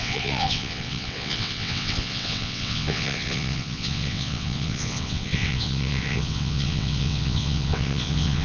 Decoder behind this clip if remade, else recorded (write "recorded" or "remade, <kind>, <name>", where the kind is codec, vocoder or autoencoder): remade, vocoder, WaveNeXt